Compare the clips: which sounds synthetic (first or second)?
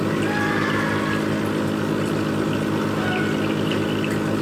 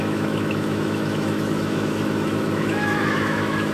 second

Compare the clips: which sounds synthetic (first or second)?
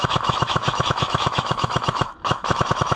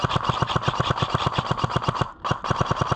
first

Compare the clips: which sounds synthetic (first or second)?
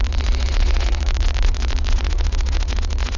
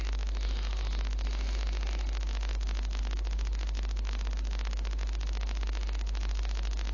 first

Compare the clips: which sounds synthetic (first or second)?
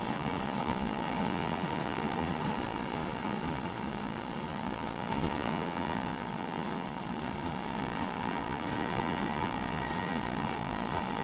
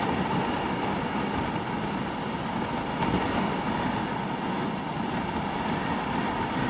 first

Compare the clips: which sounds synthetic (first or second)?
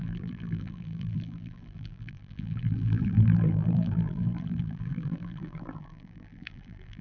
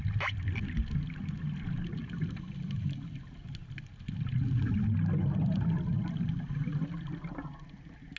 first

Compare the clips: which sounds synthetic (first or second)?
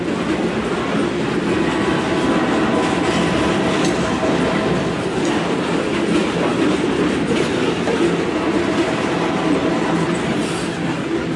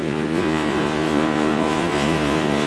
second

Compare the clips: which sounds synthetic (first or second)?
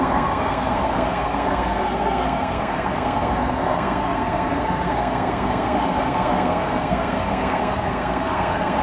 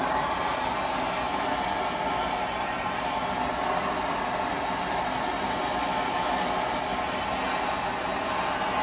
first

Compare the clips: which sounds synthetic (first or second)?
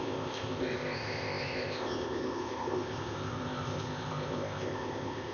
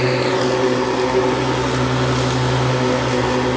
first